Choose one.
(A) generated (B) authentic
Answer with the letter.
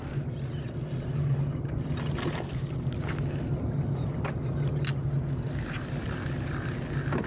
B